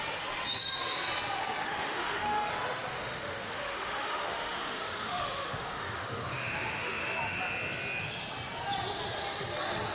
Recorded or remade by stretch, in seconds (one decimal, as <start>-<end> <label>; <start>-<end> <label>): 0.0-1.6 recorded; 1.6-2.5 remade; 2.5-2.9 recorded; 2.9-7.4 remade; 7.4-9.9 recorded